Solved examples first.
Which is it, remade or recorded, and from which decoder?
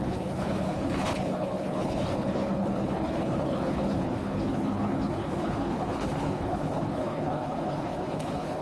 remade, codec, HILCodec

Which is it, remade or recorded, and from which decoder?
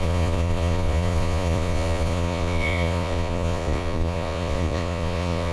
remade, vocoder, Vocos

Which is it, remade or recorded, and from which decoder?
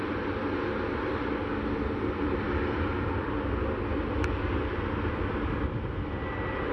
recorded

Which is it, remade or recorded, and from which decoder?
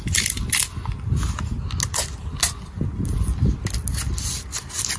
recorded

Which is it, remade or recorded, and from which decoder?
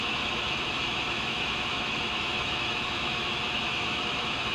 remade, autoencoder, DAC-VAE